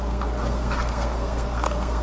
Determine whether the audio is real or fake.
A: fake